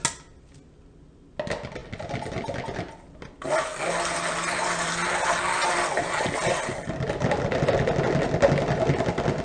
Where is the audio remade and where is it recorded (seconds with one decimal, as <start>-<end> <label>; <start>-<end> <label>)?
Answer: 0.0-9.4 recorded